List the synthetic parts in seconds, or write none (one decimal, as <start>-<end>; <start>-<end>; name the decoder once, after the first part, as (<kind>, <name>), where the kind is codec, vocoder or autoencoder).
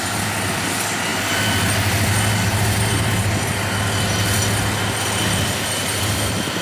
none